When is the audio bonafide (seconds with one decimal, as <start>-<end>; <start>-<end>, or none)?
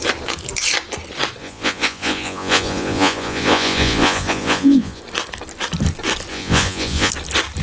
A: 0.0-1.4; 5.0-6.3; 7.1-7.6